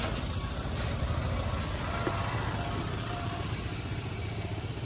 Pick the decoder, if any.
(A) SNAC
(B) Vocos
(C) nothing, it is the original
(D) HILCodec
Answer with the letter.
C